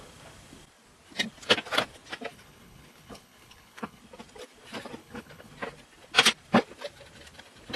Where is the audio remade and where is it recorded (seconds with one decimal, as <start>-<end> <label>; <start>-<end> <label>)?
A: 0.0-2.3 recorded; 2.3-4.0 remade; 4.0-5.0 recorded; 5.0-5.5 remade; 5.5-7.8 recorded